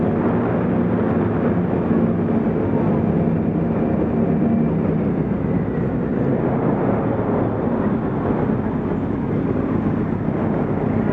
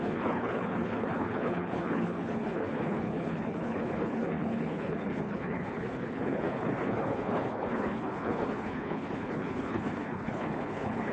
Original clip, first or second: first